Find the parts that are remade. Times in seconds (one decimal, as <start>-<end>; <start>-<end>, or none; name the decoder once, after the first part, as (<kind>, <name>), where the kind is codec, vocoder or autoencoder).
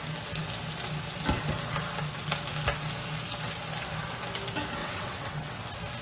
4.8-5.6 (vocoder, WaveNeXt)